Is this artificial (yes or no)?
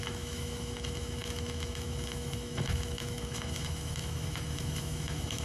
yes